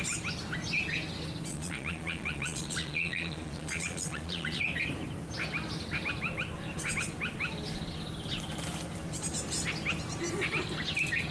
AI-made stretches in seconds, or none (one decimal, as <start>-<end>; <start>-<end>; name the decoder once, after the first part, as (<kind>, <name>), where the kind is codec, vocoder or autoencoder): 1.5-4.6 (vocoder, Vocos)